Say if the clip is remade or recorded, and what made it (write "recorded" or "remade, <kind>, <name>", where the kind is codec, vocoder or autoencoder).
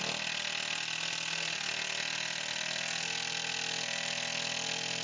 recorded